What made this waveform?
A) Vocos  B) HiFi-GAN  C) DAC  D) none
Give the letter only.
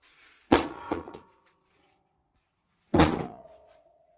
A